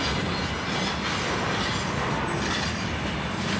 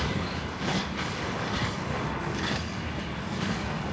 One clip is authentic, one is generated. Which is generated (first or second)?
second